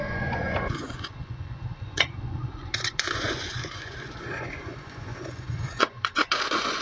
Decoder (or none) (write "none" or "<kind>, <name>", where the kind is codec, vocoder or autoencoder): vocoder, Vocos